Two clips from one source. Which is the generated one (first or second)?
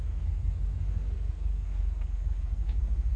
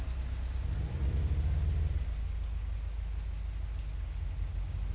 first